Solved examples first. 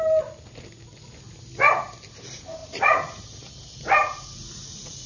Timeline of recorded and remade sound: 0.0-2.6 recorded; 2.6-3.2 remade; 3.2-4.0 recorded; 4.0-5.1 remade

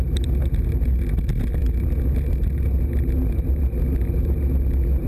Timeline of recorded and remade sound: 0.0-5.1 recorded

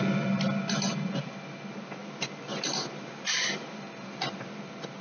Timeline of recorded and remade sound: 0.0-2.0 recorded; 2.0-5.0 remade

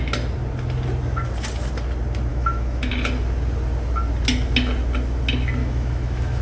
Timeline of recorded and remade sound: 0.0-2.3 recorded; 2.3-2.9 remade; 2.9-5.6 recorded; 5.6-6.4 remade

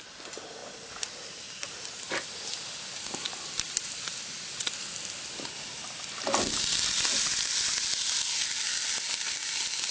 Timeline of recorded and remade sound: 0.0-9.9 recorded

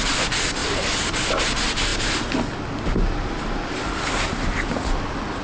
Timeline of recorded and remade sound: 0.0-5.4 recorded

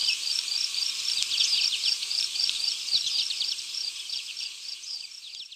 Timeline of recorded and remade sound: 0.0-0.9 remade; 0.9-1.7 recorded; 1.7-5.1 remade; 5.1-5.6 recorded

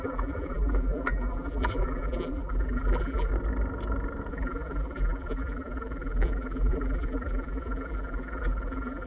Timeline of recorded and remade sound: 0.0-3.3 remade; 3.3-4.3 recorded; 4.3-9.1 remade